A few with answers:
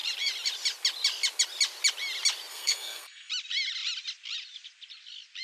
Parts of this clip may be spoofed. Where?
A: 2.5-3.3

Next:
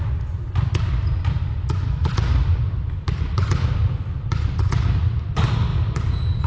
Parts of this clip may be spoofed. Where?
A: 0.0-5.7

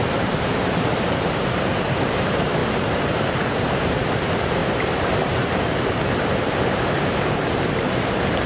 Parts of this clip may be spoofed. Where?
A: 0.0-8.5

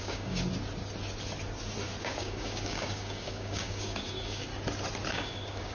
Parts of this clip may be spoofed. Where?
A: 0.0-0.5; 2.0-4.5; 5.1-5.7

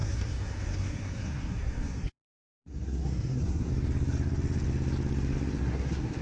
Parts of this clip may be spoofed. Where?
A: 0.0-3.7; 5.6-6.2

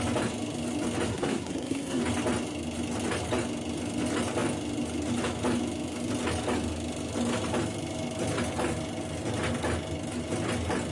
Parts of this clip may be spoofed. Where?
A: 1.1-2.0